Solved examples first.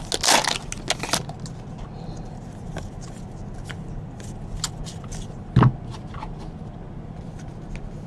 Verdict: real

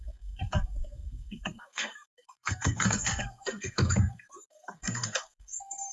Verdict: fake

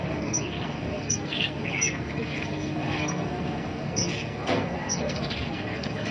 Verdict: fake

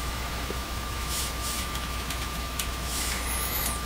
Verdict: fake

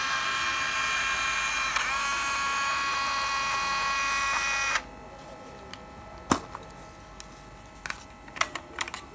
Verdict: real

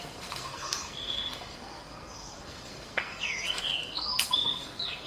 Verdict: fake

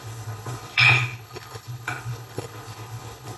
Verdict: fake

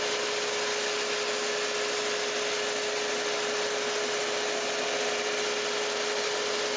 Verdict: real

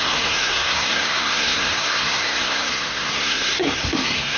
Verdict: fake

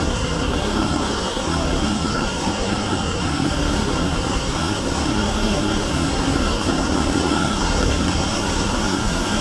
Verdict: fake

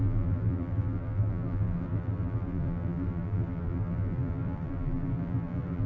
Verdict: fake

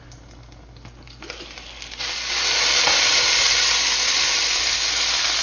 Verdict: real